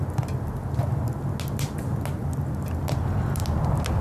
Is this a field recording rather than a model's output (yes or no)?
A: yes